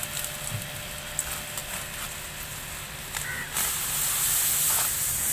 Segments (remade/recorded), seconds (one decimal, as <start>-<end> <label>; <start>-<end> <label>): 0.0-5.3 recorded